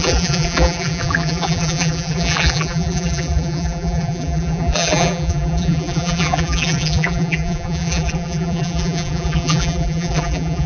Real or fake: fake